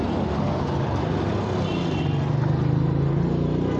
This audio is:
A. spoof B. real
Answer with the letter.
B